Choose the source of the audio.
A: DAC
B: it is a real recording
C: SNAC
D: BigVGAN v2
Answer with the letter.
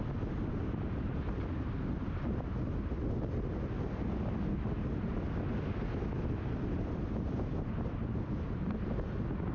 B